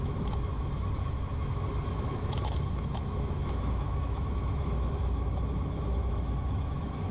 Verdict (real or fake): fake